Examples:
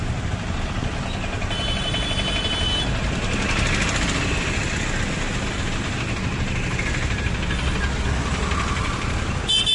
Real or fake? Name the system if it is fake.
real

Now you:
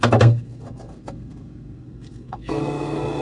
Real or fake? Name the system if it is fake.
fake, codec, SNAC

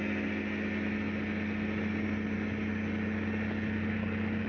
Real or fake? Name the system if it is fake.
real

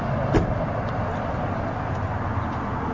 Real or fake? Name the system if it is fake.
real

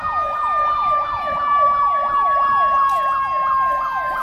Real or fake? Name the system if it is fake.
real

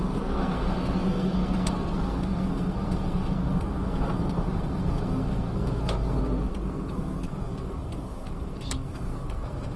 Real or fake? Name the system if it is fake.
fake, codec, SNAC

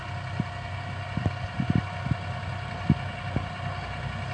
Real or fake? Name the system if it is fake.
real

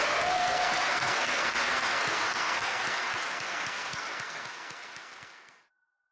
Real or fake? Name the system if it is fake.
fake, codec, SNAC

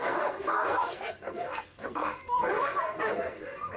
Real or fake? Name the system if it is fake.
fake, codec, SNAC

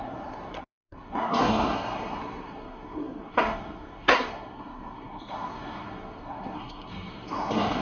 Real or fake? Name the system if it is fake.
fake, codec, SNAC